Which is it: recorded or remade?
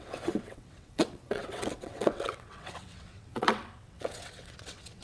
remade